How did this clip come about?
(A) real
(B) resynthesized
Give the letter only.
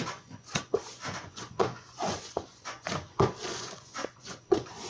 B